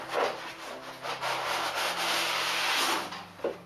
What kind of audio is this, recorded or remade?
recorded